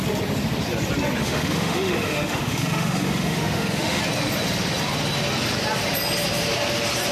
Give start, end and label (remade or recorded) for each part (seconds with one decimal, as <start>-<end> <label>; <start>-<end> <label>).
0.0-1.2 recorded; 1.2-4.0 remade; 4.0-7.1 recorded